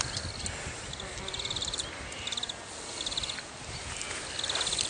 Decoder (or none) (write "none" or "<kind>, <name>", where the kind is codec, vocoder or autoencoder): none